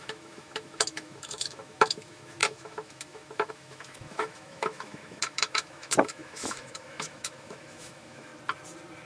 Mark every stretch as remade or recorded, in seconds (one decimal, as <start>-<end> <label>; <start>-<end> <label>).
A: 0.0-8.3 remade; 8.3-9.1 recorded